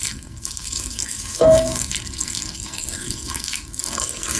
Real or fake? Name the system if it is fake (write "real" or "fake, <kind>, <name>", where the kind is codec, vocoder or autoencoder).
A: fake, codec, SNAC